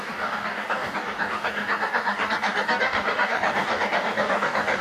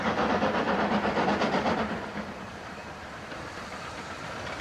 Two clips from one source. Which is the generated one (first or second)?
first